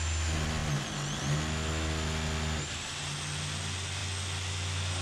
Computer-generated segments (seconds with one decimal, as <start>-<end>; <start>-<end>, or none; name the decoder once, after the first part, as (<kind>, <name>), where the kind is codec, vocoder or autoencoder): none